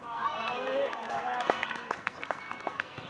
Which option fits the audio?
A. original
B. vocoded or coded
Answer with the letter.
B